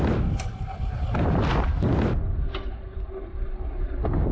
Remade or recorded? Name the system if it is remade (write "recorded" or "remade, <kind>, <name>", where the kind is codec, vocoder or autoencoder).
recorded